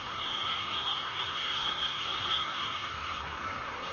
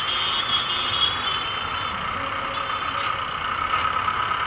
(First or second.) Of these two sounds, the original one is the second